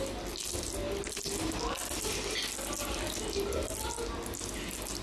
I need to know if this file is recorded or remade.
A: recorded